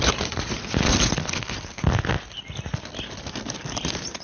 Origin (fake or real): real